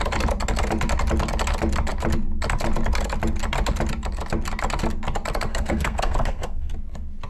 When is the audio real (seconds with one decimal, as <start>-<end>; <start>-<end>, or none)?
0.0-5.5; 6.7-7.3